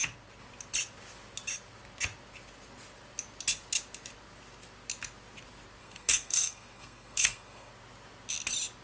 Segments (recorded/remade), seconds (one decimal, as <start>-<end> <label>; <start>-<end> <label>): 0.0-5.8 recorded; 5.8-7.7 remade; 7.7-8.8 recorded

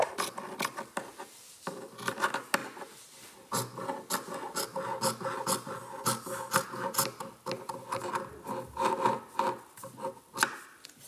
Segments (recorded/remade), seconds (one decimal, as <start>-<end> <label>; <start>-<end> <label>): 0.0-11.1 recorded

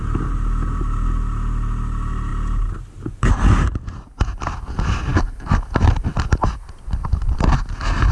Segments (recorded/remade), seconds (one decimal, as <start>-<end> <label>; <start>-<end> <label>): 0.0-8.1 recorded

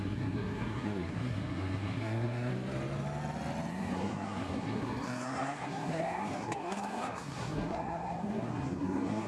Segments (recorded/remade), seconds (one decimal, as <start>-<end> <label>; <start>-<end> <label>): 0.0-2.5 remade; 2.5-3.7 recorded; 3.7-9.3 remade

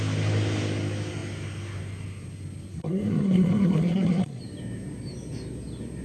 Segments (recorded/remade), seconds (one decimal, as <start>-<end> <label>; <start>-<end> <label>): 0.0-2.7 recorded; 2.7-4.4 remade; 4.4-6.0 recorded

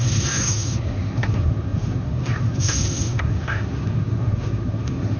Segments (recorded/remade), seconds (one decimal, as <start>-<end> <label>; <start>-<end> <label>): 0.0-5.2 remade